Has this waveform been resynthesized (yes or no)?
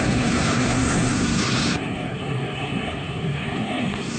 yes